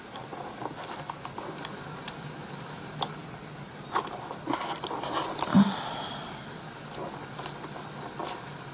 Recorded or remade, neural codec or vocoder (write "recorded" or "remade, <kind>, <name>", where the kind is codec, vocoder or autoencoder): recorded